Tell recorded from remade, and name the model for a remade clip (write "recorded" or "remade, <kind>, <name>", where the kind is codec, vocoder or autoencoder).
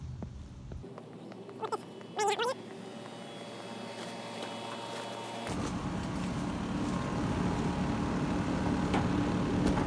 recorded